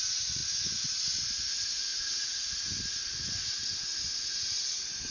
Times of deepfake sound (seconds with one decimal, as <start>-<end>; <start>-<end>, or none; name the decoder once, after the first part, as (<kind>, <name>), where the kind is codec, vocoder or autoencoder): none